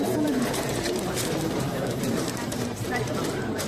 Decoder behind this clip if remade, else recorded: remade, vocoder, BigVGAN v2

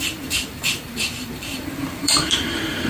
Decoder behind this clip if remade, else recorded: remade, vocoder, BigVGAN v2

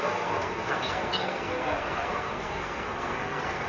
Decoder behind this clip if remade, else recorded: remade, codec, SNAC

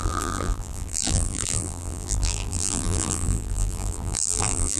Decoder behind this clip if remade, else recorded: remade, vocoder, BigVGAN v2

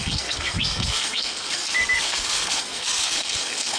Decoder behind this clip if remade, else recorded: remade, codec, SNAC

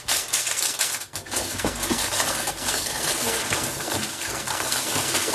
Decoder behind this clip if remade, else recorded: remade, codec, SNAC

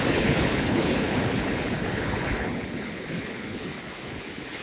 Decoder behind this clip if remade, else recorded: remade, codec, HILCodec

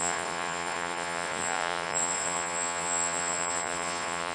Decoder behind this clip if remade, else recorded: remade, vocoder, Vocos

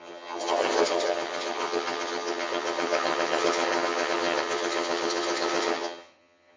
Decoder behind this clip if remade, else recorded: remade, vocoder, HiFi-GAN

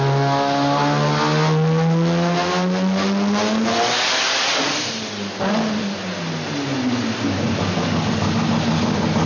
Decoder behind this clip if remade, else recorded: recorded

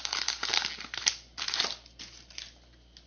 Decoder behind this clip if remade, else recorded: recorded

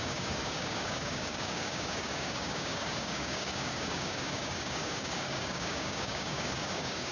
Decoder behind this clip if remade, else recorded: remade, codec, DAC